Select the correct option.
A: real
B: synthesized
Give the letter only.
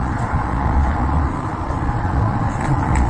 B